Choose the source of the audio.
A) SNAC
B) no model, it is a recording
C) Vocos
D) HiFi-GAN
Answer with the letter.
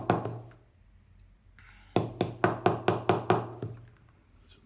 B